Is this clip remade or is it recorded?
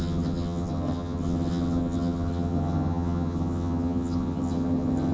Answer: remade